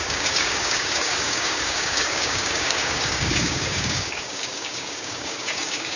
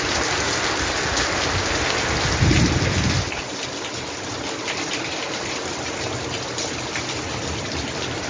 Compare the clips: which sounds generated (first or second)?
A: first